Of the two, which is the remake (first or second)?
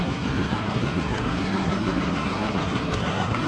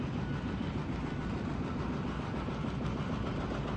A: first